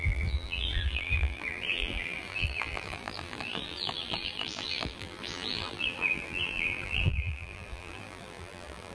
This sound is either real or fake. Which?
fake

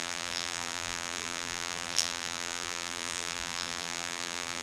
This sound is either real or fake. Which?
fake